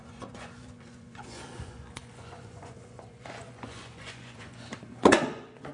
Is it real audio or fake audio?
fake